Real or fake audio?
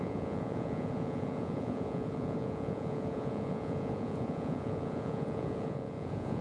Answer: fake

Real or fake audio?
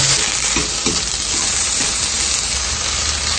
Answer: real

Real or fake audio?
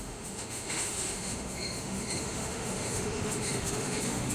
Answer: fake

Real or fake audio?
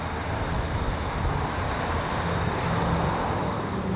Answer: real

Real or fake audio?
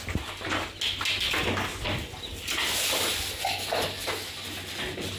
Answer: real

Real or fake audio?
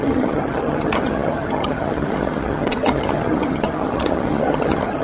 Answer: fake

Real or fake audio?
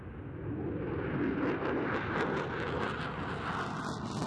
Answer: real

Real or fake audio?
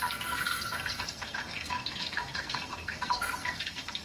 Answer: fake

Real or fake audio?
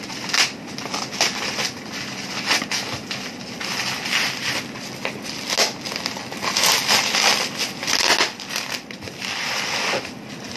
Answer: real